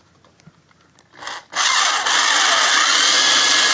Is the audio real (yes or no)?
yes